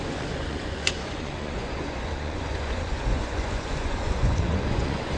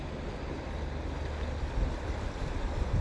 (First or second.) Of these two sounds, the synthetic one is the first